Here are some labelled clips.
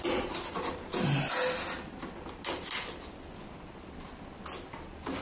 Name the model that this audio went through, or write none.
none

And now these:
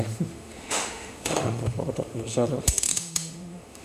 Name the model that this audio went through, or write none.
autoencoder, DAC-VAE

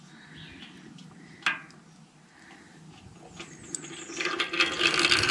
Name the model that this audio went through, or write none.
none